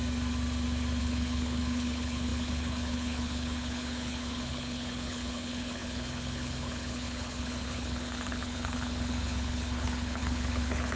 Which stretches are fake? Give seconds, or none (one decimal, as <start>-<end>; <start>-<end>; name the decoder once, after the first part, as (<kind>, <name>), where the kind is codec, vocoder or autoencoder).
1.0-11.0 (codec, HILCodec)